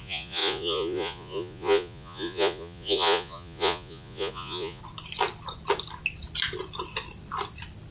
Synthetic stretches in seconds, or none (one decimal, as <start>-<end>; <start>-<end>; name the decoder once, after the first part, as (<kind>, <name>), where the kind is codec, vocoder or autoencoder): 0.0-4.8 (vocoder, Vocos)